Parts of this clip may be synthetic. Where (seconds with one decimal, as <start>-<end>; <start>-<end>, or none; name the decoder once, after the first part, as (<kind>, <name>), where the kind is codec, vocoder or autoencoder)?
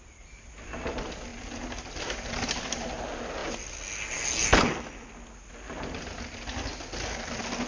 none